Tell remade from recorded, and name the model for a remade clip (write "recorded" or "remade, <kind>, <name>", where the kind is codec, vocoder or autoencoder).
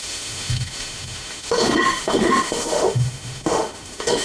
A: remade, autoencoder, DAC-VAE